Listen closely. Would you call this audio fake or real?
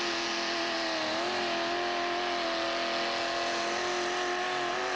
real